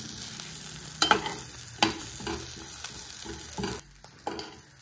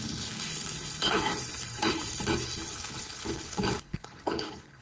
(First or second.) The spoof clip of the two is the second